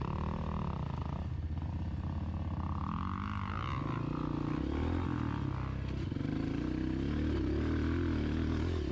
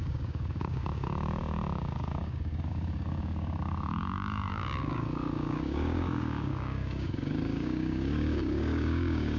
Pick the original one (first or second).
first